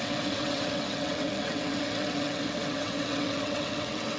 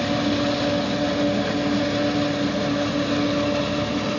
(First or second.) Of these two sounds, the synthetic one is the first